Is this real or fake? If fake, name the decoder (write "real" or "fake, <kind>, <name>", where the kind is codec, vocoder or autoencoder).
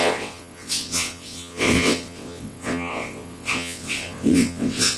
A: fake, vocoder, WaveNeXt